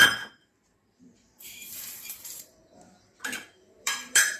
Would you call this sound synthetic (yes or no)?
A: yes